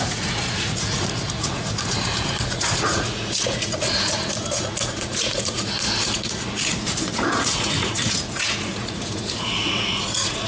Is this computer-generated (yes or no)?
yes